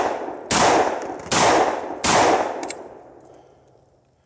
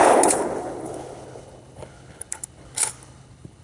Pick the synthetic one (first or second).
second